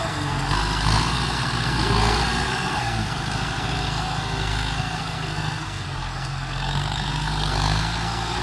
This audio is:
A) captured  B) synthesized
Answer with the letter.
B